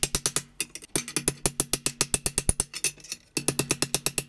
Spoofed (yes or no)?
no